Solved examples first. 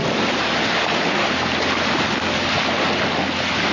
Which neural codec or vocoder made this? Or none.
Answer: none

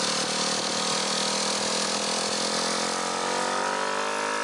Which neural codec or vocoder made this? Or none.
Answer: none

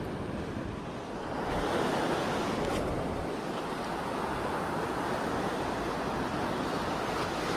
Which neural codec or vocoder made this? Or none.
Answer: none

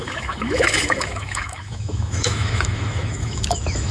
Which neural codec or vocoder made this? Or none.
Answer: autoencoder, DAC-VAE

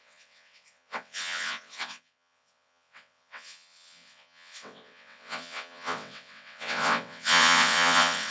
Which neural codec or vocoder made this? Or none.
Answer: vocoder, WaveNeXt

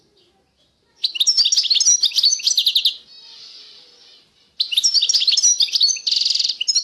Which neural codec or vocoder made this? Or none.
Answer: none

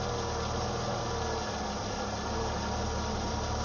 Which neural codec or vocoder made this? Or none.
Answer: none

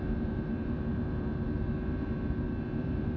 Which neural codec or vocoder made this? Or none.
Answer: vocoder, BigVGAN v2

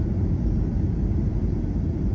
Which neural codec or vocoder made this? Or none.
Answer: vocoder, BigVGAN v2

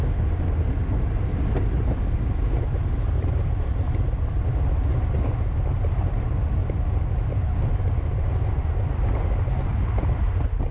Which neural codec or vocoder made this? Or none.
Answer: none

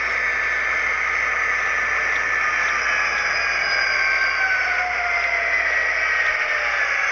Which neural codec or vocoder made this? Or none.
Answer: none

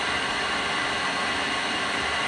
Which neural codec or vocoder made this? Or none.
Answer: none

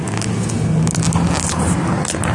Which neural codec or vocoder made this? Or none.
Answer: none